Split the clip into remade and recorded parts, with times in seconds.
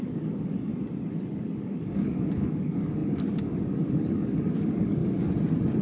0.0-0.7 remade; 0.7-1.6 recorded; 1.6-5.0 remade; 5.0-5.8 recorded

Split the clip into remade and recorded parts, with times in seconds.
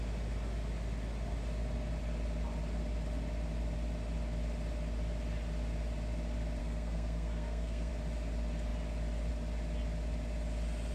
0.0-6.6 recorded; 6.6-7.9 remade; 7.9-10.9 recorded